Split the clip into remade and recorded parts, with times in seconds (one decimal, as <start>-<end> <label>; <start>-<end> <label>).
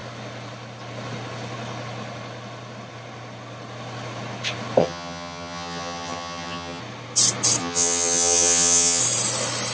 0.0-4.8 recorded; 4.8-6.8 remade; 6.8-7.6 recorded; 7.6-9.0 remade; 9.0-9.7 recorded